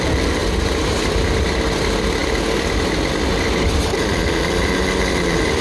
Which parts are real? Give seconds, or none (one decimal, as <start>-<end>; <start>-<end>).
0.0-2.2